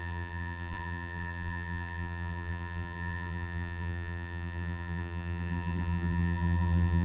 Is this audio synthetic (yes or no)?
yes